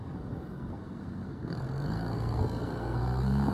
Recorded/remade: remade